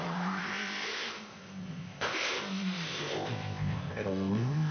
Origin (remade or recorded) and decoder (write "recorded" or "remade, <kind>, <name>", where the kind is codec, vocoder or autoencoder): remade, codec, ZipCodec